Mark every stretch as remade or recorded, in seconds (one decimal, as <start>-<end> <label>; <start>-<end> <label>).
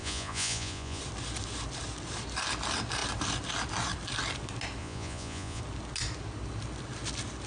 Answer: 0.0-1.0 remade; 1.0-4.8 recorded; 4.8-5.6 remade; 5.6-7.5 recorded